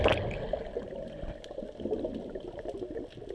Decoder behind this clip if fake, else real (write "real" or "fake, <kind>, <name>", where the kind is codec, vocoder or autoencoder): real